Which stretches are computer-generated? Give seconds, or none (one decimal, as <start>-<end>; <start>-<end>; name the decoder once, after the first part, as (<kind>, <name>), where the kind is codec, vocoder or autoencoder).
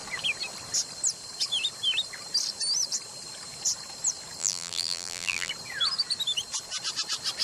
4.4-5.5 (vocoder, BigVGAN v2)